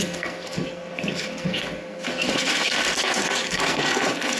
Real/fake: fake